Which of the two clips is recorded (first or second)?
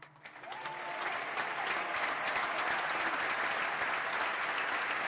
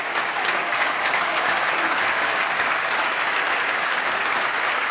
first